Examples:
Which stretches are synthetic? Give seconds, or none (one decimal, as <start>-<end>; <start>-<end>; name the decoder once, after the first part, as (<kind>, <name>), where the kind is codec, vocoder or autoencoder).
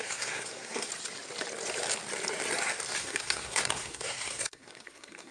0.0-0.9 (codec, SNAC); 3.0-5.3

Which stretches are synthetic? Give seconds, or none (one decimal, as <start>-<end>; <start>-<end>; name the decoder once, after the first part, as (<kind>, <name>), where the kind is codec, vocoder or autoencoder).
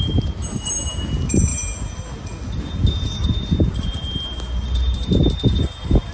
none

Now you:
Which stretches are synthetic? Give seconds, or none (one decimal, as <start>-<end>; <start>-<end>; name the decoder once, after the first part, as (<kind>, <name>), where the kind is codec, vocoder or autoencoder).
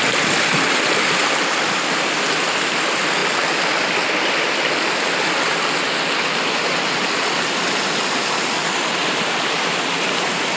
none